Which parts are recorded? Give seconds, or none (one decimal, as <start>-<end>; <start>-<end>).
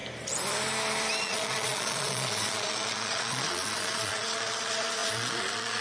0.0-1.2